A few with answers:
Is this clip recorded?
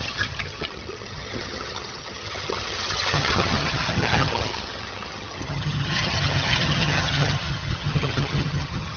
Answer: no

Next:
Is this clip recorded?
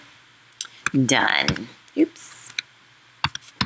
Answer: yes